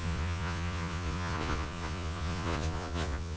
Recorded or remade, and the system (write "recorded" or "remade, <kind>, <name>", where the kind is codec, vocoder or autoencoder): remade, vocoder, Vocos